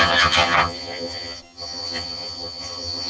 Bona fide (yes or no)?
no